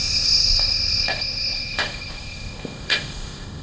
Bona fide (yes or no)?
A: no